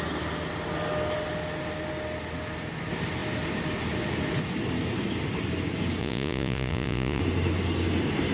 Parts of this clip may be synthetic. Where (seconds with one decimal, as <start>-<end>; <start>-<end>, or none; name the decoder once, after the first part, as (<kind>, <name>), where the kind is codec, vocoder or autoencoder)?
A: 6.0-7.2 (vocoder, Vocos)